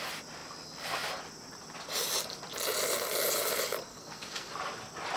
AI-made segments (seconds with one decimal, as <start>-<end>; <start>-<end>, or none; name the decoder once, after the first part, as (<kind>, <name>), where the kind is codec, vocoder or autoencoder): 3.9-4.5 (codec, SNAC)